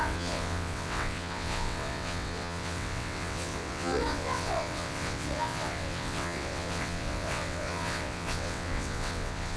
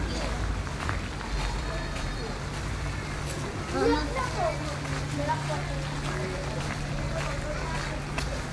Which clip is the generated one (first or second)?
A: first